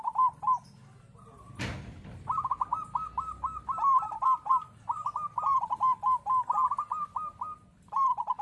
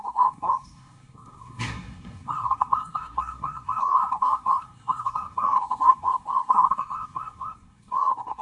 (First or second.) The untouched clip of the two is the first